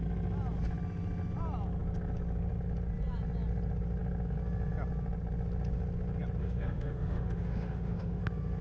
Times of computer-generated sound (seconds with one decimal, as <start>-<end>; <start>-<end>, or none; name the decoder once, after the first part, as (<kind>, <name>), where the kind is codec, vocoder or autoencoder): 6.4-8.2 (autoencoder, DAC-VAE)